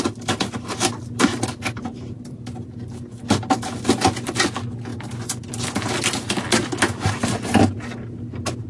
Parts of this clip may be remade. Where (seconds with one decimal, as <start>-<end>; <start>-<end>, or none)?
1.9-3.0